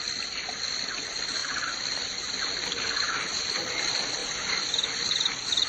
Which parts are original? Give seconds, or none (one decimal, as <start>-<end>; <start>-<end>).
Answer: 0.0-4.2; 4.7-5.7

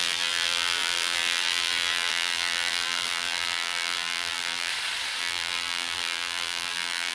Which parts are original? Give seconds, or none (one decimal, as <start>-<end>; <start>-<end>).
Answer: 4.7-5.2

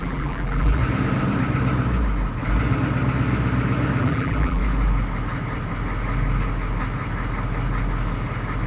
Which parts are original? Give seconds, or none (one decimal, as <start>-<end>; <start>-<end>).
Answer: 0.8-4.0; 4.6-8.7

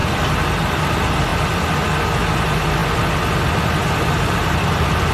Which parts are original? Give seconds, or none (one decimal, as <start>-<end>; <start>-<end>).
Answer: 0.0-5.1

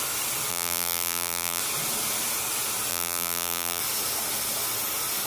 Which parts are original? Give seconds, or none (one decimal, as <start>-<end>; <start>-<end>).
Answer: 0.0-0.5; 1.6-2.9; 3.8-5.3

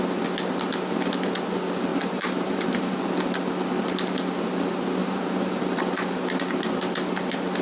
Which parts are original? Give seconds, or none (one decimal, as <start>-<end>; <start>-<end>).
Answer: 0.0-1.9; 3.0-5.0; 5.8-7.6